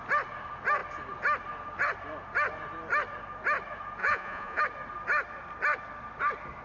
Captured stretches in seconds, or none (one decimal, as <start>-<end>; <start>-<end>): 0.0-4.0; 4.6-6.6